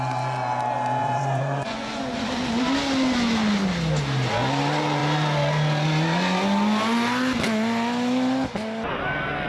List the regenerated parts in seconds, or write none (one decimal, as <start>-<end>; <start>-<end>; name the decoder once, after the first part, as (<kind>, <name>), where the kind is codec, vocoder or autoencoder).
1.0-2.0 (vocoder, Vocos)